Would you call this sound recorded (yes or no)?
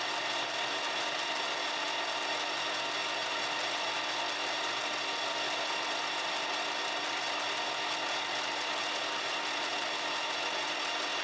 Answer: yes